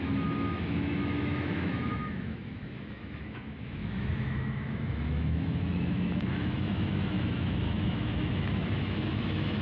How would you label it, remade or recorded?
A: remade